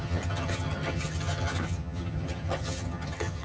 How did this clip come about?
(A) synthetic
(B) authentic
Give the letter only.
A